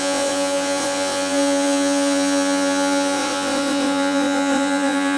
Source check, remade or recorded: remade